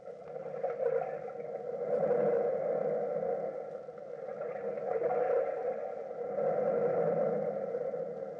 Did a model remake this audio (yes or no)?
no